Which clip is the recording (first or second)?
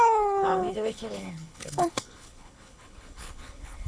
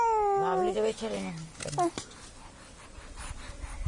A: second